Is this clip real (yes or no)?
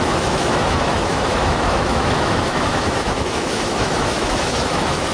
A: no